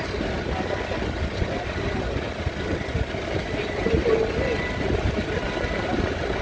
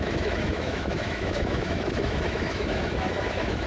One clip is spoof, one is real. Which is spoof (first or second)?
second